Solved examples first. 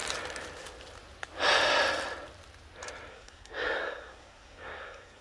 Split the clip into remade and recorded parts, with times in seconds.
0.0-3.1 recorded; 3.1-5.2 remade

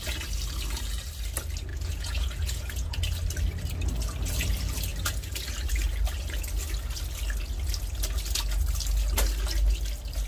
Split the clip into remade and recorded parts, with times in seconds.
0.0-1.7 recorded; 1.7-3.0 remade; 3.0-10.3 recorded

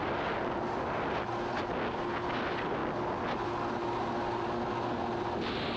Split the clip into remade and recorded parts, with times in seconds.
0.0-5.8 recorded

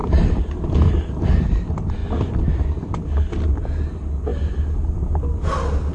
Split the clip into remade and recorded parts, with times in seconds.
0.0-0.9 remade; 0.9-5.9 recorded

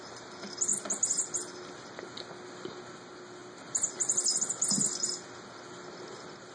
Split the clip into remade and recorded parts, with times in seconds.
0.0-6.5 recorded